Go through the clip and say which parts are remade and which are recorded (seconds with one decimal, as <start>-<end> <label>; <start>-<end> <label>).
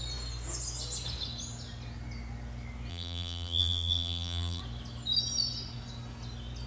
0.0-2.9 recorded; 2.9-4.6 remade; 4.6-6.7 recorded